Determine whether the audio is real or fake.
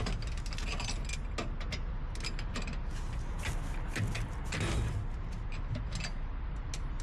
real